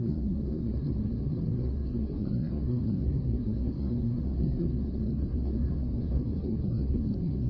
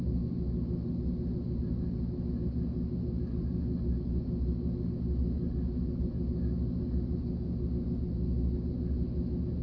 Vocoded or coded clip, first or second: first